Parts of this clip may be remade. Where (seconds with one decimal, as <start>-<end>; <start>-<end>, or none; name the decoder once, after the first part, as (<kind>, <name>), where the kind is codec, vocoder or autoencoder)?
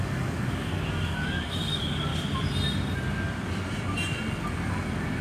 0.0-2.1 (codec, DAC); 4.7-5.2